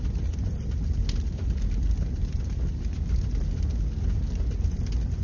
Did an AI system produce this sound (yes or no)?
no